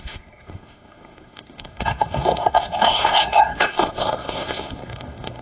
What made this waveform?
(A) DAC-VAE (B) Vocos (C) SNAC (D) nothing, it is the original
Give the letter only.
C